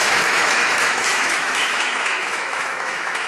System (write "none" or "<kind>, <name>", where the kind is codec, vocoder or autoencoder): autoencoder, DAC-VAE